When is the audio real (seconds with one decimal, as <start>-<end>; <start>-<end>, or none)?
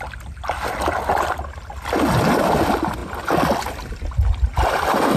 0.0-5.2